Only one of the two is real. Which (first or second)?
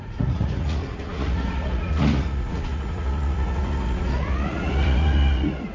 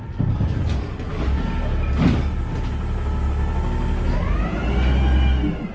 second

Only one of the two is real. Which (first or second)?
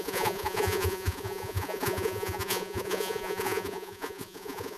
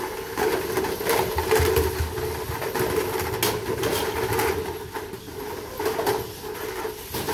second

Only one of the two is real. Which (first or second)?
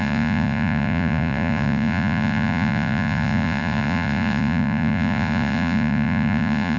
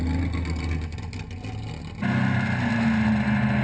second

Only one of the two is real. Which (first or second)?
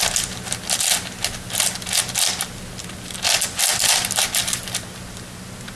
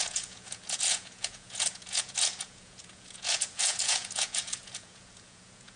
first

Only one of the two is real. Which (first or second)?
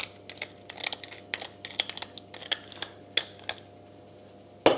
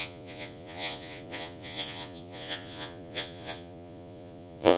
first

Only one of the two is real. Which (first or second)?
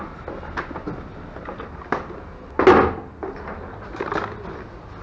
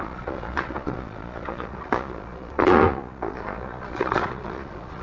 first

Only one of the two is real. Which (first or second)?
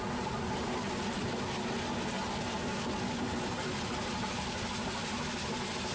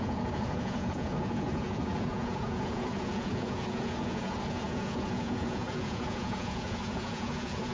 first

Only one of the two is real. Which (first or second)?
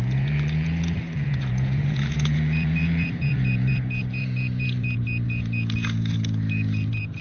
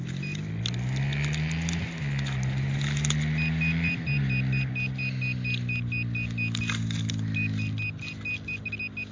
second